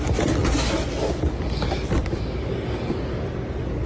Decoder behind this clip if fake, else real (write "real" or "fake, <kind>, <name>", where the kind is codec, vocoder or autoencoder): real